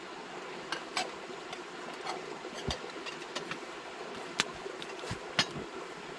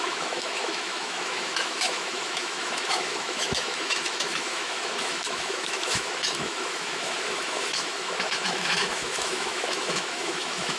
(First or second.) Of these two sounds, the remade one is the second